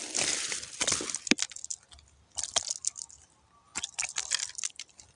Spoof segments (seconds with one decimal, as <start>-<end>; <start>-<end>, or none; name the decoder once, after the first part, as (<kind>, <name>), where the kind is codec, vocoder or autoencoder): none